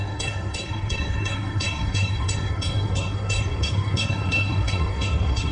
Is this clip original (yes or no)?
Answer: no